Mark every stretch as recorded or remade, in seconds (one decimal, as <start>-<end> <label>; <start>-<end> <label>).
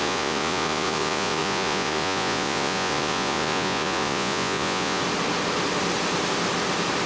0.0-5.0 remade; 5.0-7.1 recorded